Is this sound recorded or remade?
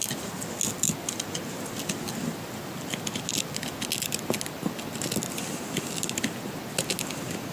recorded